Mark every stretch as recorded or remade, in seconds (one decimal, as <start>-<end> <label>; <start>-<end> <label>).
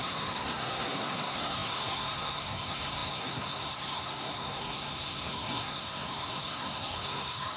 0.0-7.6 remade